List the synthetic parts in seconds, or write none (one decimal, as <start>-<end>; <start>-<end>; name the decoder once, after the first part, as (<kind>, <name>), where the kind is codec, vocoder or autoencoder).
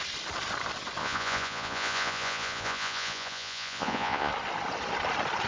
1.0-4.3 (vocoder, Vocos)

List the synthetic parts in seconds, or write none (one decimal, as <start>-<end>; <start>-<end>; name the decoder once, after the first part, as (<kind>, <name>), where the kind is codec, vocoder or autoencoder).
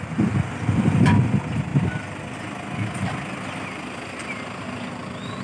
0.0-1.7 (vocoder, BigVGAN v2); 4.9-5.4